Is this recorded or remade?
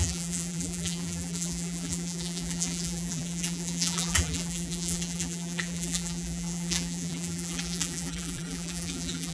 remade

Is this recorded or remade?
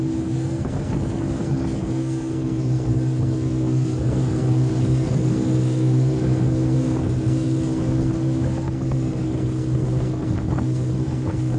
remade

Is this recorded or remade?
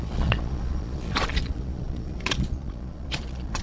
remade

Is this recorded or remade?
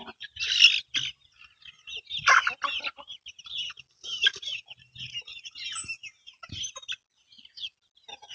recorded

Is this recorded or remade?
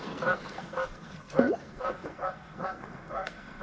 remade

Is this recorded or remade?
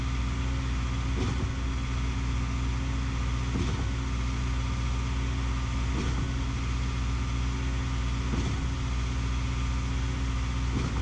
recorded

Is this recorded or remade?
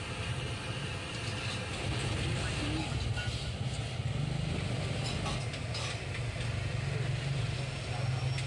recorded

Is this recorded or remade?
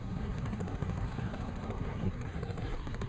remade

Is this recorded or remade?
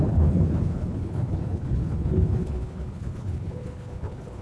remade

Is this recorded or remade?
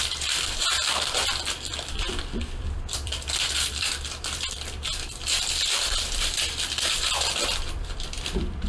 remade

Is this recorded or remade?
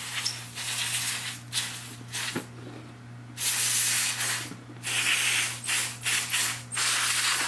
recorded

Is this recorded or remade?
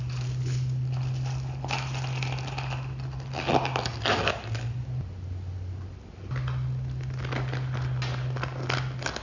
recorded